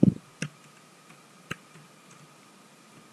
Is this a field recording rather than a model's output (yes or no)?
yes